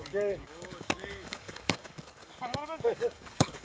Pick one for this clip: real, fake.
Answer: fake